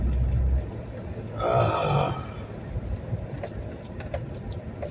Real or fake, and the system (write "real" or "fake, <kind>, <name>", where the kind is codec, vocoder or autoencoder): real